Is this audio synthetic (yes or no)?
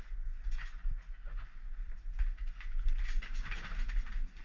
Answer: no